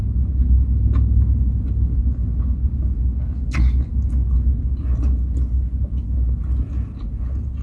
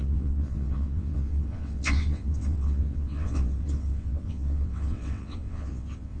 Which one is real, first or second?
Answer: first